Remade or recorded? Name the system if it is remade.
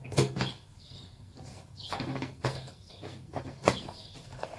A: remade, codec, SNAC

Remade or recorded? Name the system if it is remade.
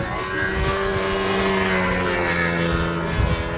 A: recorded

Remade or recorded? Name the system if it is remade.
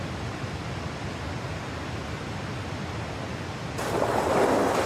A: recorded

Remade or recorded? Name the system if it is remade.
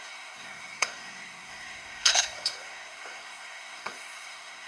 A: remade, codec, SNAC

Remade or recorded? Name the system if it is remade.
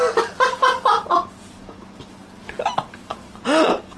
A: recorded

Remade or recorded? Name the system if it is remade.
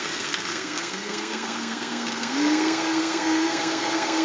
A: remade, codec, SNAC